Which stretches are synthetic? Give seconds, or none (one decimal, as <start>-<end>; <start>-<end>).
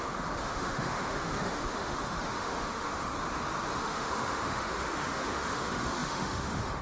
0.0-3.1; 3.8-6.8